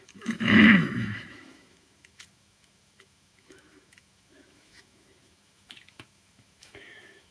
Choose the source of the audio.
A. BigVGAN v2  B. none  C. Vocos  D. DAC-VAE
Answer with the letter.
D